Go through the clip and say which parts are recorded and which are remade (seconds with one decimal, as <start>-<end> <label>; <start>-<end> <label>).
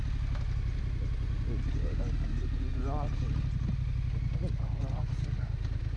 0.0-6.0 recorded